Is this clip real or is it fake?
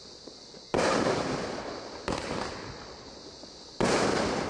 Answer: real